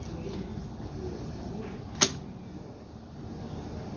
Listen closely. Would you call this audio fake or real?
real